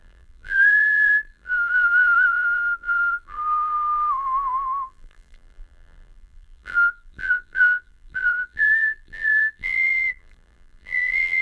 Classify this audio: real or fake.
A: fake